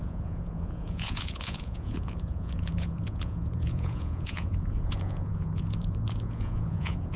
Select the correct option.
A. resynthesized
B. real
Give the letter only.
A